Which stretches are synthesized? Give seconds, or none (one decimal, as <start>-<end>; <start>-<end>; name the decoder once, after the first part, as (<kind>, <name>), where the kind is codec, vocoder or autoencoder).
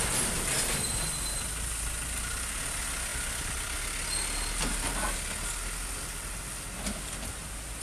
none